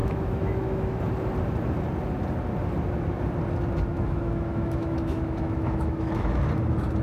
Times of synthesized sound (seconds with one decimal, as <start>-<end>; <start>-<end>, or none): 0.0-1.0; 3.9-6.4